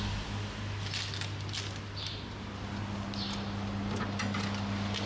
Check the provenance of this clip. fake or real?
real